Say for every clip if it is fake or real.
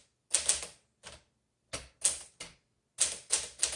real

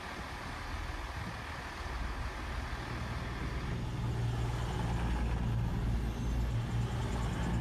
real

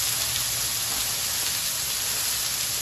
real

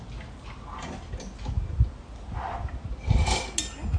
real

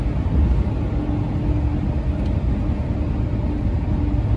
real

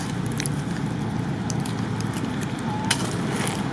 real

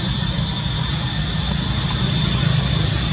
real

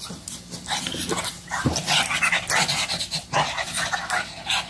real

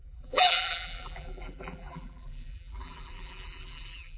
fake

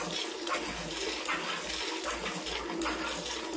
real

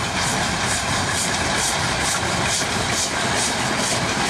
real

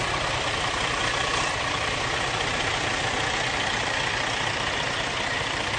fake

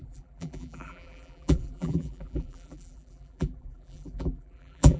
fake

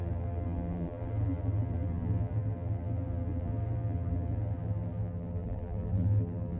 fake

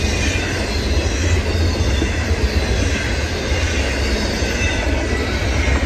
real